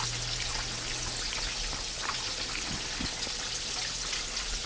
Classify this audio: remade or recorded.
recorded